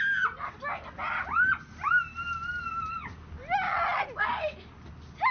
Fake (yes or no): no